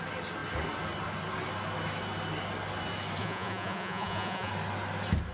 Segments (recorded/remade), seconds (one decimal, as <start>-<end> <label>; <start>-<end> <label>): 0.0-3.2 recorded; 3.2-4.5 remade; 4.5-5.3 recorded